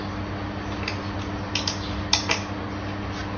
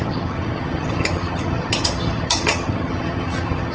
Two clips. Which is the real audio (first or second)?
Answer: first